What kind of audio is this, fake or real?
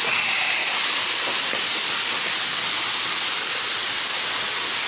real